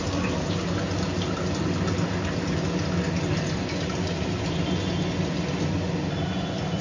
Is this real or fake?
real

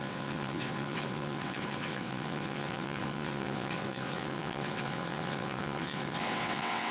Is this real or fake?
fake